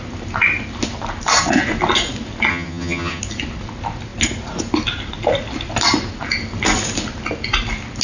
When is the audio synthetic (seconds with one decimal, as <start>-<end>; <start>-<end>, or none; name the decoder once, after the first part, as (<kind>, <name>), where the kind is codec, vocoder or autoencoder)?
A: 2.5-3.2 (vocoder, HiFi-GAN)